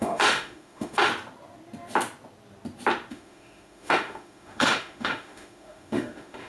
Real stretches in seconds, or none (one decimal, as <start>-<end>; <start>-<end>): 1.1-3.1